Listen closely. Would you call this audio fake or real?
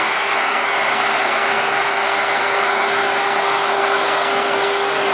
fake